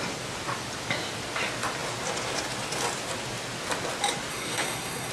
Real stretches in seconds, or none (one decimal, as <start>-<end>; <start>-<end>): 0.0-4.3